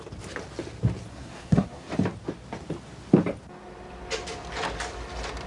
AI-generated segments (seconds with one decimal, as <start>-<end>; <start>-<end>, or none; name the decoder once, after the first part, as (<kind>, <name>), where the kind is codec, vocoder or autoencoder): 1.1-1.9 (codec, SNAC)